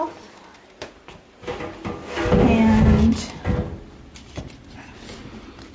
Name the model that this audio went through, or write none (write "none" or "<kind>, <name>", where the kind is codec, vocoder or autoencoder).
none